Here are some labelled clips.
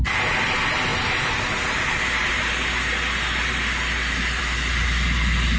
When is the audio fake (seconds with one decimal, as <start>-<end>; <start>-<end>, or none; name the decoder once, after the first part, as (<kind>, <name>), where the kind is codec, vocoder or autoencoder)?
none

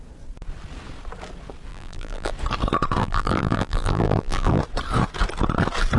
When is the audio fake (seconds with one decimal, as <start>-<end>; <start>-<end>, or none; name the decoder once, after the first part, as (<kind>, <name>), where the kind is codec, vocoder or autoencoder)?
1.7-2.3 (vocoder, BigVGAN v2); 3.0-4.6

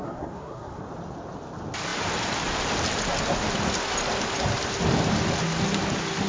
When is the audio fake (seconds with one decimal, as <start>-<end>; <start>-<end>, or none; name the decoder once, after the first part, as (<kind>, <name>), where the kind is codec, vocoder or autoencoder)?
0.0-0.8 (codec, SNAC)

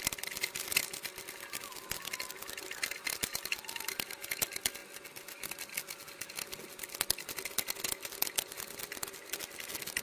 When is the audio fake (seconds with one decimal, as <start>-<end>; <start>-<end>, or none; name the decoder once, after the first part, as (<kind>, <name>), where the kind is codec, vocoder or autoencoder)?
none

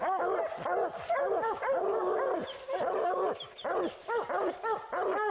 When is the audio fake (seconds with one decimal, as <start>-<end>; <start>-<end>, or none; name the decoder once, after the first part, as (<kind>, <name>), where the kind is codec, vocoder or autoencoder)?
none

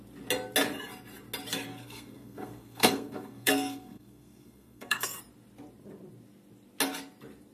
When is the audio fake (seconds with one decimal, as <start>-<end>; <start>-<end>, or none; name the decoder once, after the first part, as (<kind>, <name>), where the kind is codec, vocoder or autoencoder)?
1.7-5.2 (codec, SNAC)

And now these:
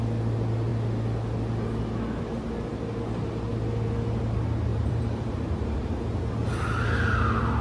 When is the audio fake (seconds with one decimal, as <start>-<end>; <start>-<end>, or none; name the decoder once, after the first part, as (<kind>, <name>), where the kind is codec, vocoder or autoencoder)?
4.7-6.0 (vocoder, BigVGAN v2)

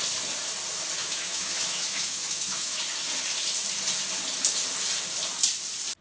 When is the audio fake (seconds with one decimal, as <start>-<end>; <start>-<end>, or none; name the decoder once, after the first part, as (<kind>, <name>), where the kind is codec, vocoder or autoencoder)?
1.0-2.8 (autoencoder, DAC-VAE)